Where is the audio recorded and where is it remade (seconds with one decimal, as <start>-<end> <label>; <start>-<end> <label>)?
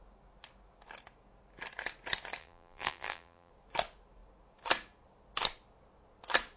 0.0-2.4 recorded; 2.4-3.5 remade; 3.5-6.6 recorded